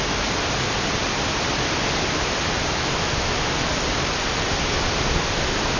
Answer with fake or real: real